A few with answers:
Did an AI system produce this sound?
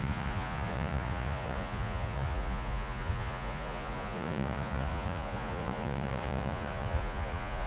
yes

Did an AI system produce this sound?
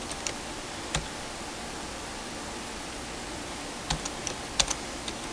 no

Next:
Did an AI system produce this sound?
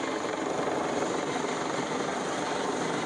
no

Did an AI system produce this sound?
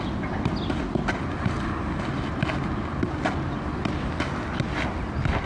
no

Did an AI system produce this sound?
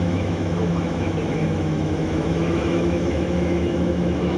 yes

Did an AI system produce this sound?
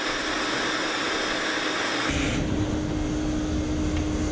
no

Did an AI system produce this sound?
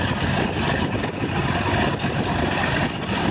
no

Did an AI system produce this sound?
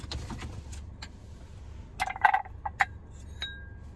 no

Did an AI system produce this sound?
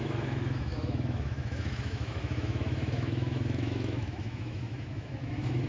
yes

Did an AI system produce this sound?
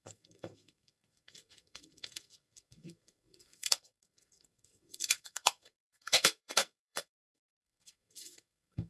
yes